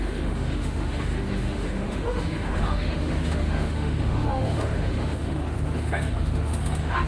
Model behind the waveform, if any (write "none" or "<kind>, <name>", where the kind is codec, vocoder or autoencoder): autoencoder, DAC-VAE